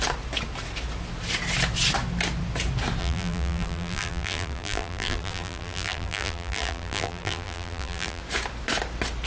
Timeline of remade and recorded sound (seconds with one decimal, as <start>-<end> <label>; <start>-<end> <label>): 0.0-3.0 recorded; 3.0-8.2 remade; 8.2-9.3 recorded